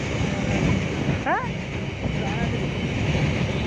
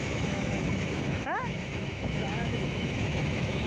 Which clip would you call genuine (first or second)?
first